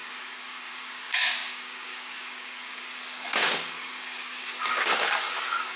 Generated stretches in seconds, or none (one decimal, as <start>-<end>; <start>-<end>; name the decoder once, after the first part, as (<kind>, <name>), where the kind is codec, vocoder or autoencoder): 0.0-5.8 (codec, DAC)